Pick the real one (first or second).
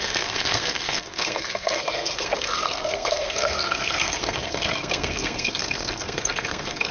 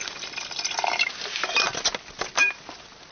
second